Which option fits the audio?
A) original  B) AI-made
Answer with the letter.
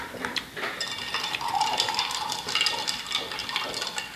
A